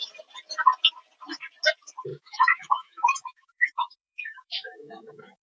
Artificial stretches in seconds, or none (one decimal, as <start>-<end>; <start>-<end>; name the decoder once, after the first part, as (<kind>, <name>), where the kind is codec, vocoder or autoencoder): 2.1-5.5 (autoencoder, DAC-VAE)